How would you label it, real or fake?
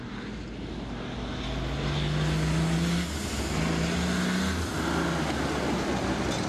real